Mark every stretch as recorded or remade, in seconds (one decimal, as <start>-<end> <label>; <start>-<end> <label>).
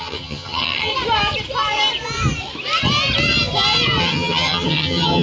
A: 0.0-0.9 remade; 0.9-4.0 recorded; 4.0-5.2 remade